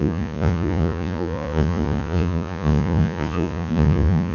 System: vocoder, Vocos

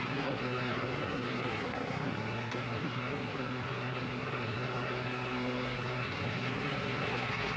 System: codec, SNAC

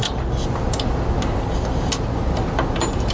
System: none